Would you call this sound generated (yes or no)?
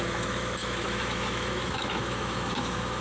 yes